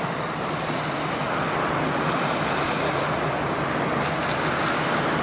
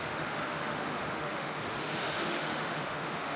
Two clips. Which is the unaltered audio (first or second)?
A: first